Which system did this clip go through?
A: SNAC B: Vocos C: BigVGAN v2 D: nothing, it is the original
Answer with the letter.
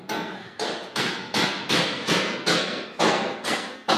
A